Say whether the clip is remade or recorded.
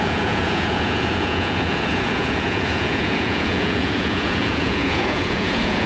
remade